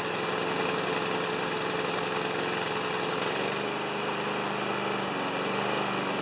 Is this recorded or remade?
recorded